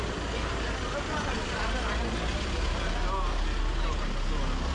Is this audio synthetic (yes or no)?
no